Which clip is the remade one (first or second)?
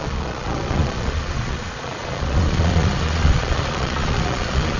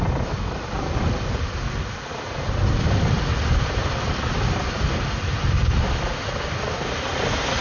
first